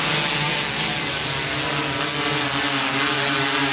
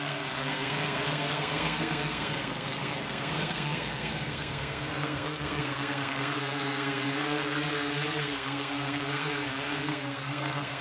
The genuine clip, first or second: first